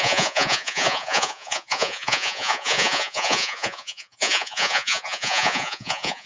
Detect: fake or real fake